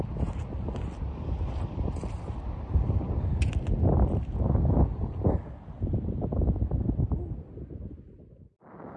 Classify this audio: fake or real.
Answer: real